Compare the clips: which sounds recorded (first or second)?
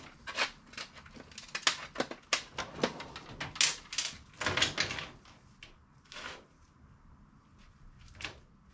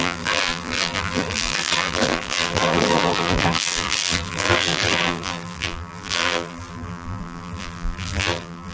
first